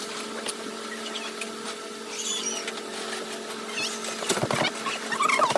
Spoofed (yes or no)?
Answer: no